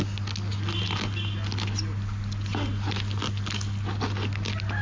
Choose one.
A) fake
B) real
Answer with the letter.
B